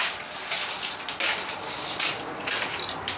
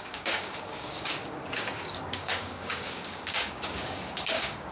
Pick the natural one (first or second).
first